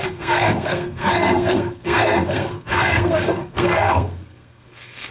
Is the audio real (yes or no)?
no